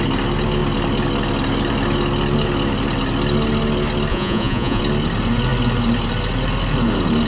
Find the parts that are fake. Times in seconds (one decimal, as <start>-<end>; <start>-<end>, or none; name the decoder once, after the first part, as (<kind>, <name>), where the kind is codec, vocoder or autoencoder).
4.1-4.8 (vocoder, Vocos)